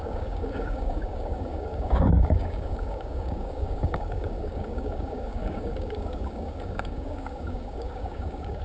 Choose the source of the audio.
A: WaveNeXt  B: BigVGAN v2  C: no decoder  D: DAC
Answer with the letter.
D